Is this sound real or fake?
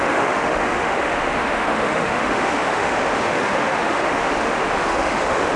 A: fake